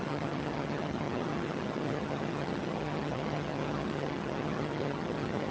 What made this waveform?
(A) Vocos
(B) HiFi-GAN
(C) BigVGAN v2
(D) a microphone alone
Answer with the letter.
B